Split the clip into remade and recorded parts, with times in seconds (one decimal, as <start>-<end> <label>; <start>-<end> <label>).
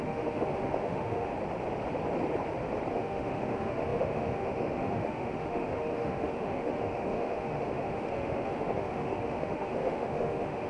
0.0-1.3 remade; 1.3-2.9 recorded; 2.9-10.7 remade